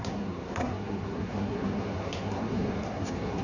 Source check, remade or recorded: remade